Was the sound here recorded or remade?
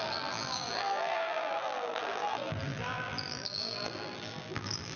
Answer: remade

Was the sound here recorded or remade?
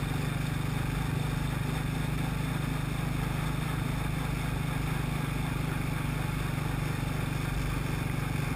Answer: recorded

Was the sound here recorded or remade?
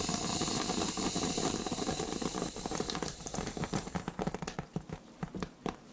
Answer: remade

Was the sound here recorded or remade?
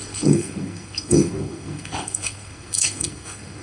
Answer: remade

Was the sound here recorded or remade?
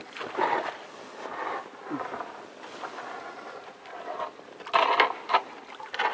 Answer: recorded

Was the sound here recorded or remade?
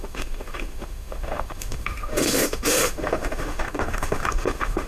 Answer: remade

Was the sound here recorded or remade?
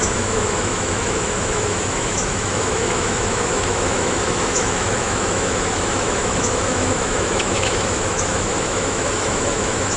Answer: remade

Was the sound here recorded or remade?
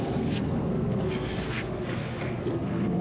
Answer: remade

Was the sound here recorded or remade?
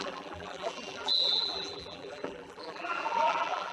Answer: remade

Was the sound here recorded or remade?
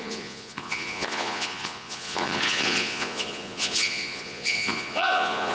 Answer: remade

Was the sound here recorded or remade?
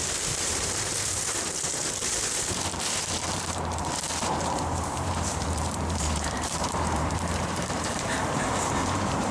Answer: remade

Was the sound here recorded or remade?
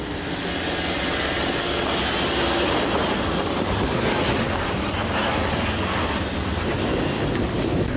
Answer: recorded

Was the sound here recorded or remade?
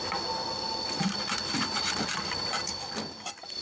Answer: recorded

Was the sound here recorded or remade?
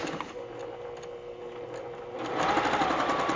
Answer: recorded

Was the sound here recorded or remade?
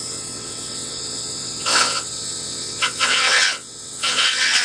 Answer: remade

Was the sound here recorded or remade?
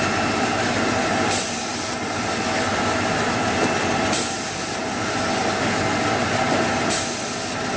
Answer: recorded